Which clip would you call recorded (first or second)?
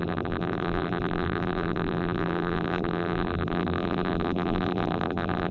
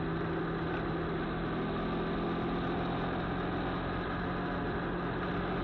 second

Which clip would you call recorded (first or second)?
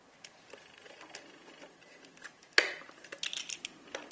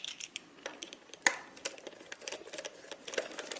first